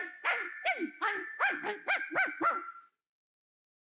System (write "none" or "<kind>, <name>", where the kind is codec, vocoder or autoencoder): none